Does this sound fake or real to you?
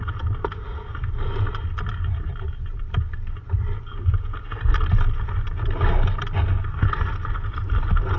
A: real